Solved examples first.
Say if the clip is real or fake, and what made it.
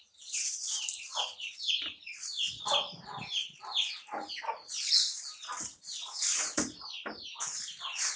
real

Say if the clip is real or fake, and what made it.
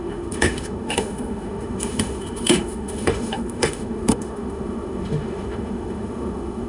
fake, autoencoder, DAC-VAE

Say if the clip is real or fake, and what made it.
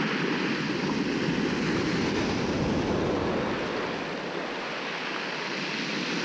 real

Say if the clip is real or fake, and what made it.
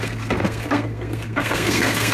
fake, codec, SNAC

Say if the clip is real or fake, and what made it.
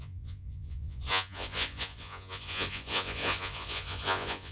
fake, vocoder, Vocos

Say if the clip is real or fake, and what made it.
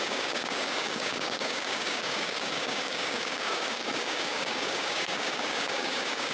fake, codec, DAC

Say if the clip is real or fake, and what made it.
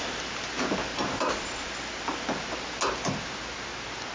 real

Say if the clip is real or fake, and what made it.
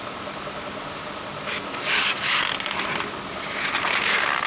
real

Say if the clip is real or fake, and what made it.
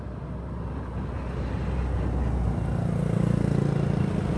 real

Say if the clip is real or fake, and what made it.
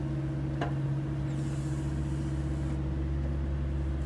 real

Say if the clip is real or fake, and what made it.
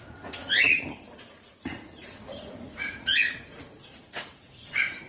fake, vocoder, Vocos